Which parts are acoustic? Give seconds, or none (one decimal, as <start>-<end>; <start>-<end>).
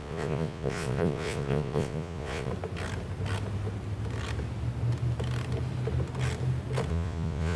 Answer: 2.5-6.9